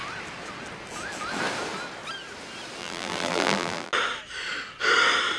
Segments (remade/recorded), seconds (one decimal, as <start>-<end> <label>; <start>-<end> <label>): 0.0-2.8 recorded; 2.8-3.9 remade; 3.9-5.4 recorded